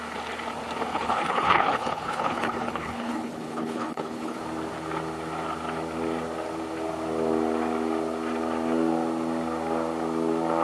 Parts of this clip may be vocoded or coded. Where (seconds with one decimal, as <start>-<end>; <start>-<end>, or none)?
0.9-4.4